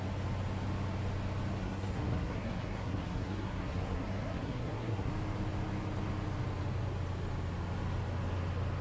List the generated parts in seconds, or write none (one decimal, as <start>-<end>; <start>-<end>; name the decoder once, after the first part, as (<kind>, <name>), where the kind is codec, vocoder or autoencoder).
1.6-5.1 (codec, SNAC)